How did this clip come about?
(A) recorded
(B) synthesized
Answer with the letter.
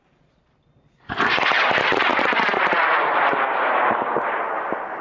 B